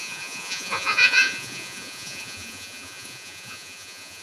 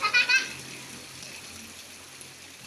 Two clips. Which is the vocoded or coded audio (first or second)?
first